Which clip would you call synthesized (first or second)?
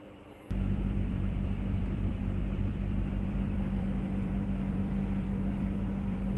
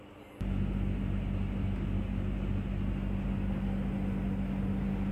first